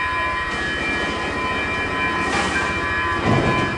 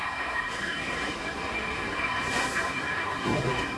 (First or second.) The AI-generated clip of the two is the second